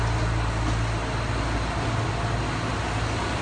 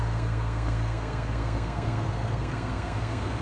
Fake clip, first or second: second